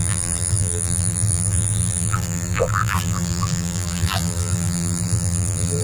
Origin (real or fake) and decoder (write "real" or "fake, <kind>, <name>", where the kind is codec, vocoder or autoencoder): fake, vocoder, BigVGAN v2